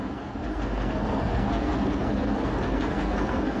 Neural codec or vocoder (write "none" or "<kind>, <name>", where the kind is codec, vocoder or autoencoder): codec, SNAC